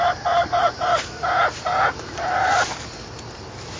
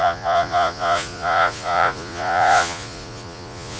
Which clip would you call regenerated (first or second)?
second